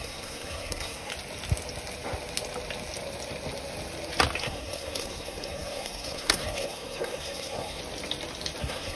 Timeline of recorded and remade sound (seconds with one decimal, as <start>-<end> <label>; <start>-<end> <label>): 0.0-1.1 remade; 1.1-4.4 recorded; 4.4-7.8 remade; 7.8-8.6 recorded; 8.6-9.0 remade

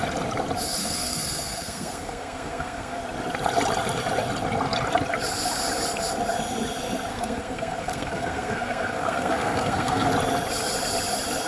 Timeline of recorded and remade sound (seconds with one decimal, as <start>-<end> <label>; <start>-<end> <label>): 0.0-0.8 recorded; 0.8-3.0 remade; 3.0-7.1 recorded; 7.1-10.1 remade; 10.1-11.5 recorded

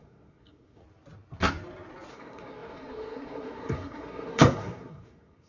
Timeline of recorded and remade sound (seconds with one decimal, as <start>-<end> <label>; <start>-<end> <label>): 0.0-0.8 remade; 0.8-2.1 recorded; 2.1-5.5 remade

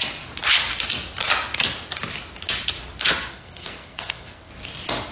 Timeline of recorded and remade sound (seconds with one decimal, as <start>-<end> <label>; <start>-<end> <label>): 0.0-3.3 recorded; 3.3-4.5 remade; 4.5-5.1 recorded

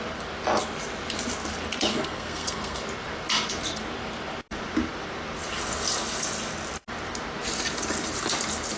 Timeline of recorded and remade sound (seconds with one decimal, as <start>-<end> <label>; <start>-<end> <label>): 0.0-1.9 recorded; 1.9-2.8 remade; 2.8-8.8 recorded

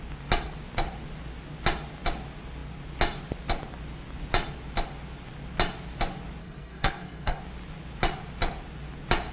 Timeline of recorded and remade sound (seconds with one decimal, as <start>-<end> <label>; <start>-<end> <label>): 0.0-6.4 recorded; 6.4-7.4 remade; 7.4-9.3 recorded

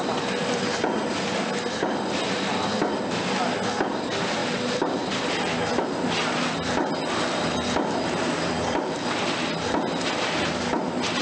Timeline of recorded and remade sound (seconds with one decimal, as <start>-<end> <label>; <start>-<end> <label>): 0.0-11.2 recorded